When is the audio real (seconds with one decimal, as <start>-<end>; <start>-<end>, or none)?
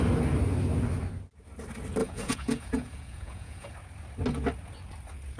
0.0-2.0; 3.7-5.4